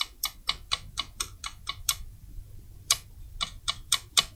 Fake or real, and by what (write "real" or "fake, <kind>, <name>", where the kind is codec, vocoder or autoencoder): fake, vocoder, BigVGAN v2